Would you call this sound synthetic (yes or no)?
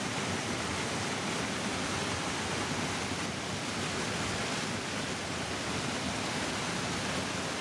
no